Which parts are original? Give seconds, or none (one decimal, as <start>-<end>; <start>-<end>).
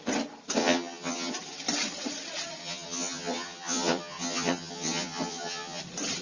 0.0-0.6; 1.3-2.6; 5.8-6.2